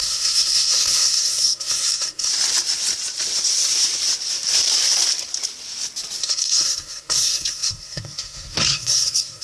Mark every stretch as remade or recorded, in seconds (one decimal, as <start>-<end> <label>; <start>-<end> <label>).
0.0-2.3 remade; 2.3-6.2 recorded; 6.2-9.4 remade